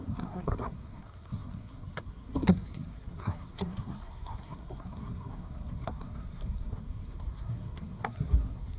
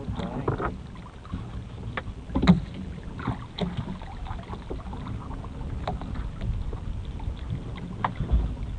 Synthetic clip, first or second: first